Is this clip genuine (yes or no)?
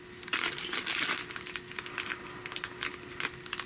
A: yes